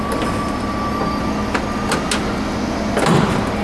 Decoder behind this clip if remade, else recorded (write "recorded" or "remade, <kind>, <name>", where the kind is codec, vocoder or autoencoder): recorded